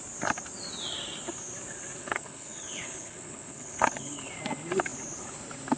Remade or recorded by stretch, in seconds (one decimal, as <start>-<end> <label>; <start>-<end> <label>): 0.0-2.0 recorded; 2.0-4.3 remade; 4.3-5.8 recorded